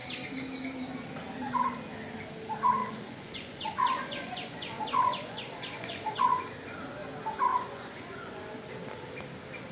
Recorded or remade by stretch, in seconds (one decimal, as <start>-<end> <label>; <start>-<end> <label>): 0.0-2.8 recorded; 2.8-6.5 remade; 6.5-7.5 recorded; 7.5-8.4 remade; 8.4-9.7 recorded